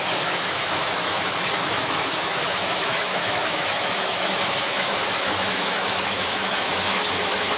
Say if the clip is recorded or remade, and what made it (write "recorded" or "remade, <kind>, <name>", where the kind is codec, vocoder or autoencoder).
remade, autoencoder, DAC-VAE